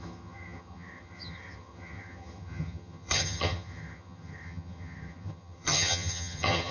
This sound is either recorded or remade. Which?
remade